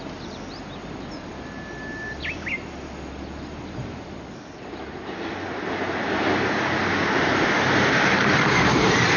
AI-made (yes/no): no